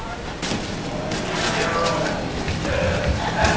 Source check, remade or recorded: remade